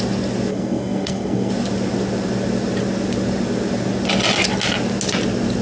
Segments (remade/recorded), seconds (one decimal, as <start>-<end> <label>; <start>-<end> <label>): 0.0-0.5 recorded; 0.5-1.5 remade; 1.5-5.6 recorded

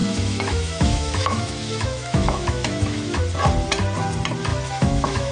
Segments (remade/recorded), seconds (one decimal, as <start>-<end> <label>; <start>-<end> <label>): 0.0-3.2 remade; 3.2-4.5 recorded; 4.5-5.3 remade

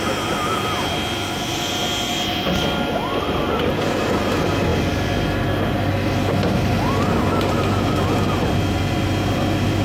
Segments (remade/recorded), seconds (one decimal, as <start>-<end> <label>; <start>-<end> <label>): 0.0-9.8 recorded

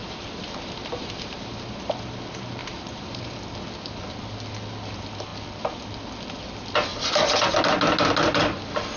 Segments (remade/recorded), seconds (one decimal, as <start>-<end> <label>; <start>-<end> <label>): 0.0-1.6 remade; 1.6-2.6 recorded; 2.6-3.5 remade; 3.5-9.0 recorded